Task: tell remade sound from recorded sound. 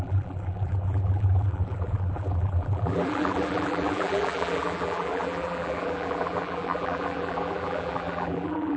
remade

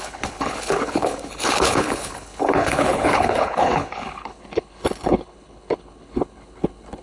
remade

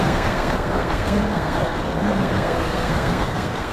remade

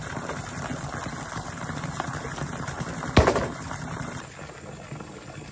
recorded